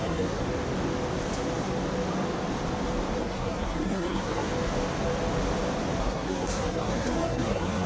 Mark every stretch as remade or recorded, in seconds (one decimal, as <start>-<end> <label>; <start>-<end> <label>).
0.0-0.4 remade; 0.4-3.2 recorded; 3.2-4.5 remade; 4.5-6.0 recorded; 6.0-7.9 remade